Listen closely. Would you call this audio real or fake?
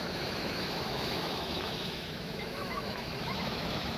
fake